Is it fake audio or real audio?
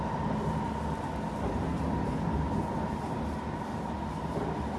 real